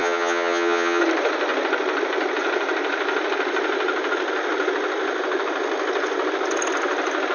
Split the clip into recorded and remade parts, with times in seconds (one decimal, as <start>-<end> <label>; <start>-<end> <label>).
0.0-1.0 remade; 1.0-7.3 recorded